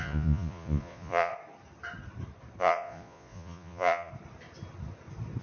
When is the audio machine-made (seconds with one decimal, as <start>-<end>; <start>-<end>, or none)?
0.0-1.3; 2.6-4.1